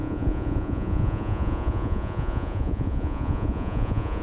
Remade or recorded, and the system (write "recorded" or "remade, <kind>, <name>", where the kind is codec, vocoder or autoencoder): remade, vocoder, Vocos